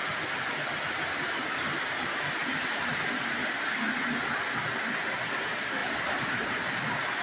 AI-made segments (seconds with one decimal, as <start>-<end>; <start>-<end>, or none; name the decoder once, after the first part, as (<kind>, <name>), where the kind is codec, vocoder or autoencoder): 2.4-3.5 (vocoder, BigVGAN v2); 5.8-7.2